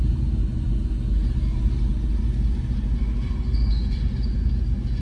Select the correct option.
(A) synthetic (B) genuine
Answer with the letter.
B